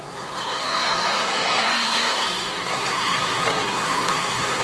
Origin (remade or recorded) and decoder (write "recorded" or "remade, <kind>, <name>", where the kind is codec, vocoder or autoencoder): remade, codec, SNAC